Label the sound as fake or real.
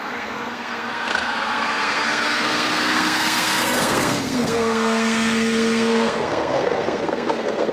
fake